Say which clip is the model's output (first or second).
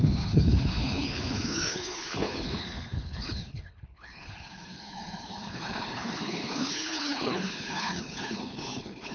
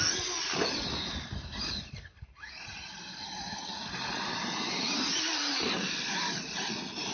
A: first